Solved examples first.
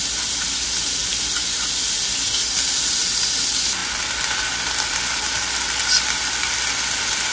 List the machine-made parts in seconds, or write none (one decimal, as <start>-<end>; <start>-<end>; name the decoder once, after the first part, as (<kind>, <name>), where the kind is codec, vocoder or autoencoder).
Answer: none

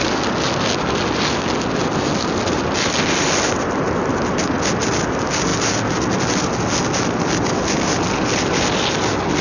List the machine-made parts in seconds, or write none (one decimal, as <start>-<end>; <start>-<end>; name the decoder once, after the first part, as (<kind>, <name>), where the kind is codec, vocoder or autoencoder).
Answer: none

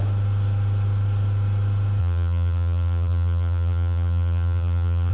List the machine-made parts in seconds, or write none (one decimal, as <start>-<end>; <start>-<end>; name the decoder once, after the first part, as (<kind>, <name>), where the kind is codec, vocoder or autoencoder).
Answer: 2.0-5.1 (vocoder, BigVGAN v2)

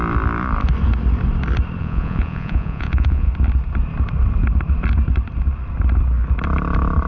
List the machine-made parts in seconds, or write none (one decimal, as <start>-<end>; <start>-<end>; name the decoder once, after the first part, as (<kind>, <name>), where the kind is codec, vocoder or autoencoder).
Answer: 1.8-3.3 (vocoder, Vocos)

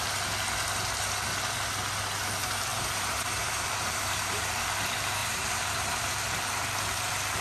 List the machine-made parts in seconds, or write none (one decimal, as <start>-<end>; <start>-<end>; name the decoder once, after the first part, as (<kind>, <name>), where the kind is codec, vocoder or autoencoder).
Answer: 2.7-4.5 (vocoder, BigVGAN v2); 5.2-6.1

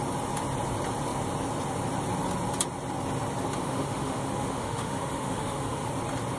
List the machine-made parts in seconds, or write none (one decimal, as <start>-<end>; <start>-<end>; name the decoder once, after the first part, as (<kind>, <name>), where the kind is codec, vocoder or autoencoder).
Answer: 3.6-5.9 (autoencoder, DAC-VAE)

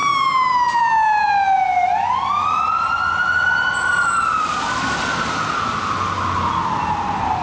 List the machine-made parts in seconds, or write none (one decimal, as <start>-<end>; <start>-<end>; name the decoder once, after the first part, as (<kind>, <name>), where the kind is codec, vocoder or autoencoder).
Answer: none

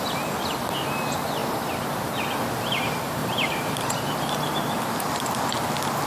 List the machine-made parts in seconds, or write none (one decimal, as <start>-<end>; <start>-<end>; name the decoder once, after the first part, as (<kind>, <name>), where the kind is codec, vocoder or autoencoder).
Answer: 1.4-2.2 (vocoder, BigVGAN v2); 3.2-4.3